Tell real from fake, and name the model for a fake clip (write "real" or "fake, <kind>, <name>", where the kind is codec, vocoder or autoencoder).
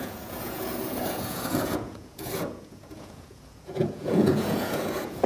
fake, vocoder, Vocos